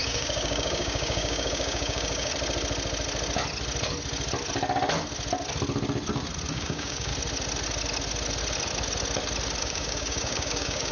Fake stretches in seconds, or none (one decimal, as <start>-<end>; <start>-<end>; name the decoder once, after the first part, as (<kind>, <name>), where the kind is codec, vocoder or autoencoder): 0.0-2.3 (codec, DAC); 6.5-7.1; 9.6-10.9